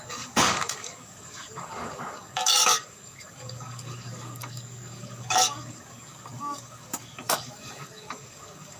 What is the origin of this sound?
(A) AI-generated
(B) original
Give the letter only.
A